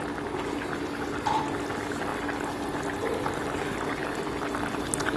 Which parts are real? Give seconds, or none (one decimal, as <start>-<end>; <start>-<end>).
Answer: 0.0-5.2